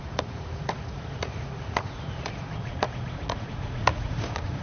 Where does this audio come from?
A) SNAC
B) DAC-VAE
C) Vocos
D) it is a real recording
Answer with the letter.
C